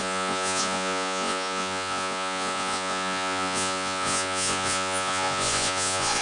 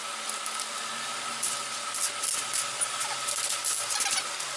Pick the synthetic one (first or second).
first